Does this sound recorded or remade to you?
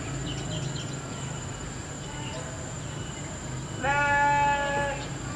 recorded